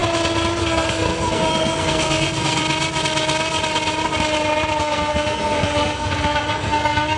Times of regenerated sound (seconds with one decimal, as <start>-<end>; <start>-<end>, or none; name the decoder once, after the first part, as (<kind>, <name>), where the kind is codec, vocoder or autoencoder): 0.6-2.6 (codec, SNAC); 4.8-7.2